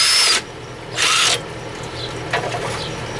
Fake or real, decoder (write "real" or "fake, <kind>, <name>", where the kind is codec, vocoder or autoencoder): real